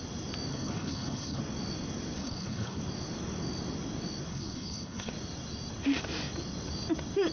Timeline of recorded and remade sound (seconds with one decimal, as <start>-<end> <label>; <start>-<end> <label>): 0.0-0.5 recorded; 0.5-1.4 remade; 1.4-2.2 recorded; 2.2-2.8 remade; 2.8-4.3 recorded; 4.3-5.1 remade; 5.1-7.3 recorded